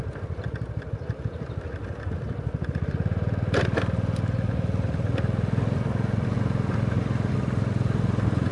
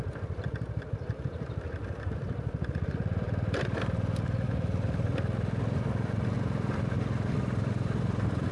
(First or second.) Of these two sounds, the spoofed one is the second